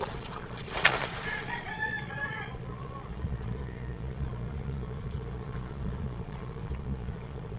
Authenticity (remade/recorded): remade